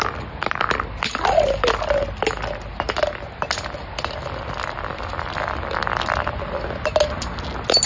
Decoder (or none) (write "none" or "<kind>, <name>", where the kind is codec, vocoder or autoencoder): none